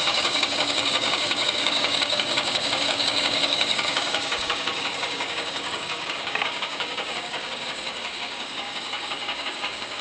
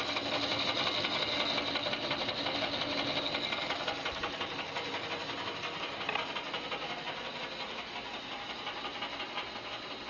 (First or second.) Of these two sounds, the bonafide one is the second